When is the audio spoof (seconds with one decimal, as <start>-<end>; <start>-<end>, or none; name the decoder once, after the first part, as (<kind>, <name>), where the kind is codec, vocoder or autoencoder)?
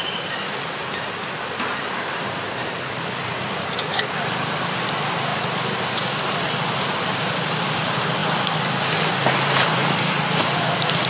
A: 0.0-5.3 (vocoder, BigVGAN v2); 6.2-8.2; 9.0-11.1